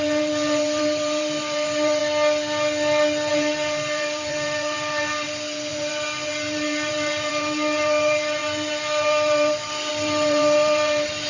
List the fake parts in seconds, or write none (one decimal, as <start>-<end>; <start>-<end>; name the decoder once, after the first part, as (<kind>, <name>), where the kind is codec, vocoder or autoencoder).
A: 0.0-2.0 (vocoder, BigVGAN v2); 3.3-11.3